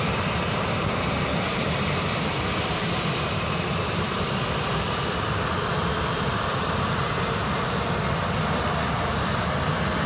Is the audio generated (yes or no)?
yes